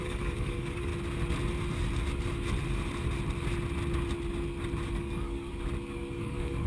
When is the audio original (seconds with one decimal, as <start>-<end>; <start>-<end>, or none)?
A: 0.9-4.9; 5.5-6.1